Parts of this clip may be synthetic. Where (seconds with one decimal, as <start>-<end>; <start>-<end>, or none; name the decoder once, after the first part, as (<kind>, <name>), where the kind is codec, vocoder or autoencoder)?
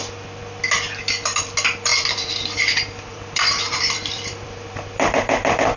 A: 1.9-5.8 (vocoder, BigVGAN v2)